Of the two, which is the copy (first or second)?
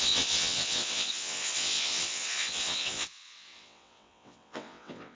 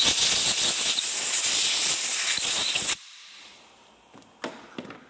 first